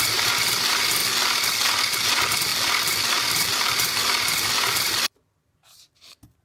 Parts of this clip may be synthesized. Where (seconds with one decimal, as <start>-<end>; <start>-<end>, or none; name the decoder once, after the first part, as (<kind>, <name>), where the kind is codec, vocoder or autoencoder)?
2.5-5.9 (vocoder, BigVGAN v2)

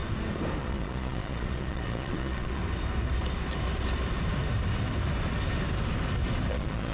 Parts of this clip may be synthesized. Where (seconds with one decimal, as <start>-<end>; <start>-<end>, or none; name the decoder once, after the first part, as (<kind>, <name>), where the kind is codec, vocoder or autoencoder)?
0.6-2.6 (vocoder, Vocos); 6.5-6.9

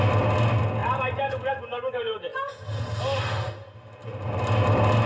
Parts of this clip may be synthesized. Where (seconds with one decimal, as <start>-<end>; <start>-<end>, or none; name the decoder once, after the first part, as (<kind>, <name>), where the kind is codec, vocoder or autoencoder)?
0.8-1.5 (vocoder, BigVGAN v2); 4.0-5.1

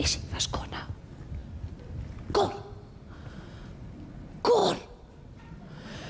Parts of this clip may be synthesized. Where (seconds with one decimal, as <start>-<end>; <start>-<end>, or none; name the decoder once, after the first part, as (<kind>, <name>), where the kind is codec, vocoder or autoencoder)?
4.6-6.1 (vocoder, BigVGAN v2)

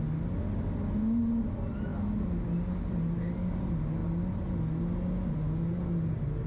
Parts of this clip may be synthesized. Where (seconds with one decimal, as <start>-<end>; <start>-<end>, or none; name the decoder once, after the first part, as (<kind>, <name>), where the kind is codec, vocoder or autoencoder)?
none

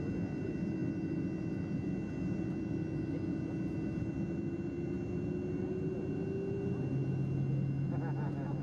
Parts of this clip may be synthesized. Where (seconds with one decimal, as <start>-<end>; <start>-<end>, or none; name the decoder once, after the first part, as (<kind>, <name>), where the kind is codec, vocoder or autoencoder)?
none